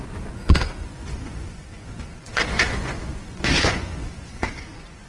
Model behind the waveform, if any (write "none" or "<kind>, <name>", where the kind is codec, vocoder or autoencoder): vocoder, Vocos